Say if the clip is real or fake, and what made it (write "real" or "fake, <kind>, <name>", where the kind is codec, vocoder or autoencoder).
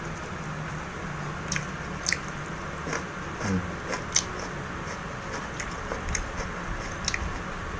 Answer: real